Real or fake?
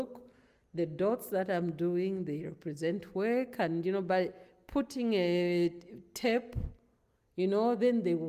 real